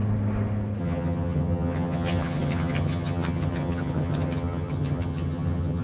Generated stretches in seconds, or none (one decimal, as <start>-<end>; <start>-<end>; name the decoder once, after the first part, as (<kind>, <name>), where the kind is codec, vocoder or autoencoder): 0.8-5.8 (vocoder, HiFi-GAN)